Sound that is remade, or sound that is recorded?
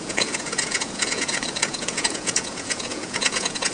remade